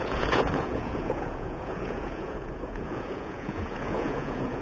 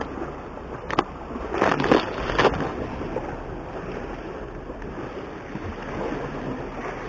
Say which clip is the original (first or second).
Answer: second